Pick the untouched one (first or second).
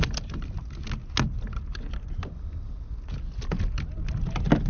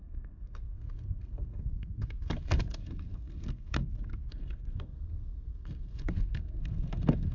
first